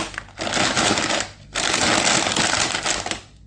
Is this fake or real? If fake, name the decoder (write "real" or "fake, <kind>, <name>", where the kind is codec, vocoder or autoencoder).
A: real